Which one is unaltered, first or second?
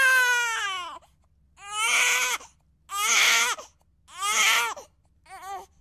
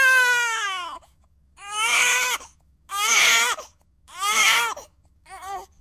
first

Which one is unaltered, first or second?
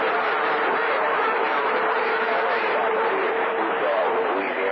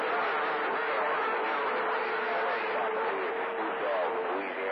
second